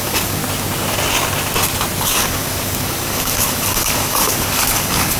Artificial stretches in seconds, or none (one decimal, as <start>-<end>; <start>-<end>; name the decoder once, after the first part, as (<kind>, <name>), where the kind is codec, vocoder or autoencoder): 0.0-0.4 (codec, DAC); 2.0-5.2